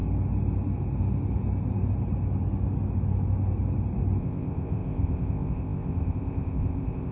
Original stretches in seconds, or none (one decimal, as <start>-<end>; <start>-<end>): 0.0-4.2